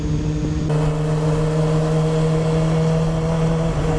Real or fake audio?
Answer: real